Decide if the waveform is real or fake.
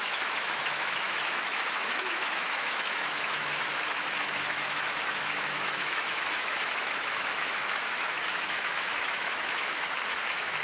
fake